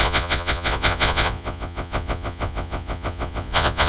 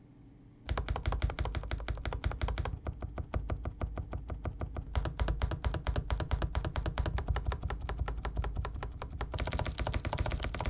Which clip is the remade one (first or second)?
first